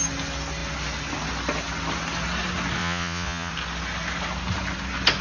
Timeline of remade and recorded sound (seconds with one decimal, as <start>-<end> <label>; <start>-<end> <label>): 0.0-2.8 recorded; 2.8-3.5 remade; 3.5-5.2 recorded